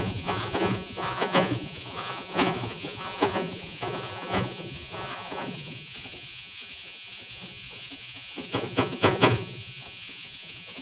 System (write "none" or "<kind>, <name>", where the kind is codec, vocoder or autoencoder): vocoder, Vocos